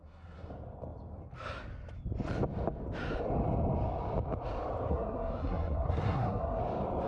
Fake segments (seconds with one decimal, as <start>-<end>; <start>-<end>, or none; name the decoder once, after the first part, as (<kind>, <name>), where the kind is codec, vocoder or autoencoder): 0.0-0.5 (codec, SNAC); 4.9-6.6